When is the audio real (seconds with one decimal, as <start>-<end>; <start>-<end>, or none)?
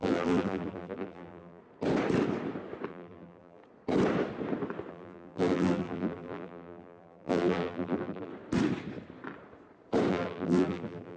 1.6-2.9; 3.6-4.9; 8.3-10.1